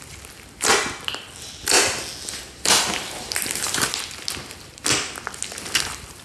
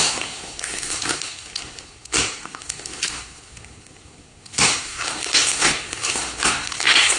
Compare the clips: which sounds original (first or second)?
first